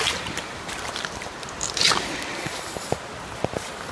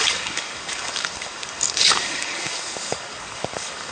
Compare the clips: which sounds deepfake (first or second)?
second